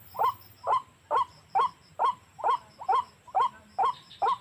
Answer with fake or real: fake